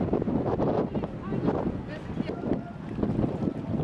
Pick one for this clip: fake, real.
real